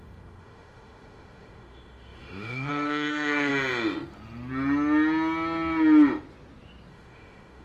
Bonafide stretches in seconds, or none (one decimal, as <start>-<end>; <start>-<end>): 3.5-6.9